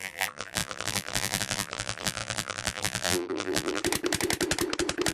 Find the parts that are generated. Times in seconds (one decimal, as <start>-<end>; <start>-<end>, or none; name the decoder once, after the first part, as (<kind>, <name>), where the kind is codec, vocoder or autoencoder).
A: 0.0-3.8 (vocoder, BigVGAN v2)